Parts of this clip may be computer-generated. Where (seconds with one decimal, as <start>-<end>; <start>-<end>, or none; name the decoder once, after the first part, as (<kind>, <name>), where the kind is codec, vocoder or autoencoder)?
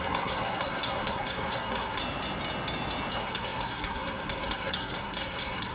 0.0-2.0 (codec, SNAC); 3.1-5.7